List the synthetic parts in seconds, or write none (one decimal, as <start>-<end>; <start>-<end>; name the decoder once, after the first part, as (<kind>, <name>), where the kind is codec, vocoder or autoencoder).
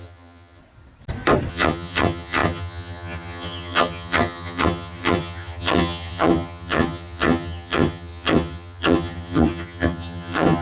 0.0-0.6 (vocoder, HiFi-GAN); 1.5-10.6